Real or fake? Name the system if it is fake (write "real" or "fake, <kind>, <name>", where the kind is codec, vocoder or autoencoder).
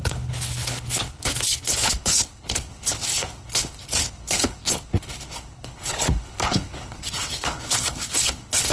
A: fake, codec, HILCodec